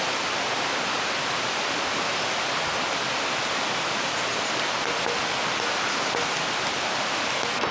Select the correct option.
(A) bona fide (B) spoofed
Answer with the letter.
A